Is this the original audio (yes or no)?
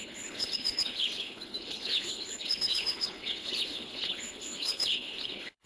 no